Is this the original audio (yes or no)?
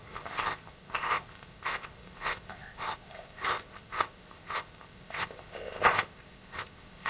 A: no